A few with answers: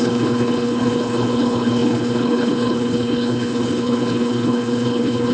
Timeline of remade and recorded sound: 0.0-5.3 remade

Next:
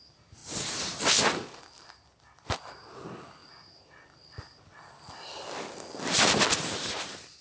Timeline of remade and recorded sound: 0.0-0.4 recorded; 0.4-1.0 remade; 1.0-7.4 recorded

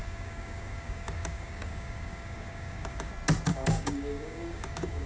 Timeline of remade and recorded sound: 0.0-3.1 remade; 3.1-3.5 recorded; 3.5-5.1 remade

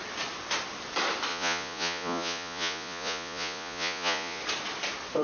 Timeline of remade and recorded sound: 0.0-1.3 recorded; 1.3-4.4 remade; 4.4-5.2 recorded

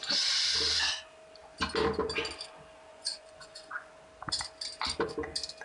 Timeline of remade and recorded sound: 0.0-2.9 recorded; 2.9-3.9 remade; 3.9-5.6 recorded